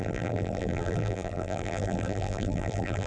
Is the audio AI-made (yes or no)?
yes